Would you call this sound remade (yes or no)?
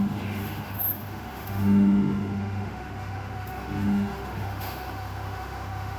yes